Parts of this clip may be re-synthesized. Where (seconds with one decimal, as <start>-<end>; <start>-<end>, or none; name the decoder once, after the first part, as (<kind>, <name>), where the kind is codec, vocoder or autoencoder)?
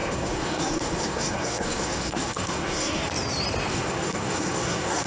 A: 0.0-3.1 (codec, SNAC); 3.7-5.1